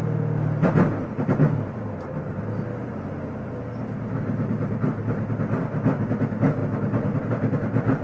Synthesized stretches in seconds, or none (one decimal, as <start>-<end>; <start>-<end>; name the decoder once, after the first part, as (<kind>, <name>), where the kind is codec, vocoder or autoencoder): none